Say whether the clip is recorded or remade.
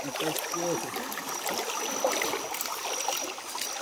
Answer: recorded